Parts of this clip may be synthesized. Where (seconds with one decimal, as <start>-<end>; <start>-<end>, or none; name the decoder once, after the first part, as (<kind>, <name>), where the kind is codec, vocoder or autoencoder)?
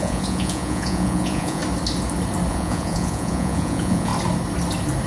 0.0-1.6 (vocoder, Vocos); 2.5-4.1